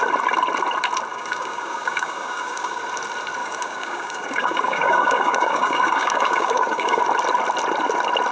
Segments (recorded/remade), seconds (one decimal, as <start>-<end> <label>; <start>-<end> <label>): 0.0-1.1 recorded; 1.1-2.8 remade; 2.8-3.4 recorded; 3.4-7.0 remade; 7.0-8.3 recorded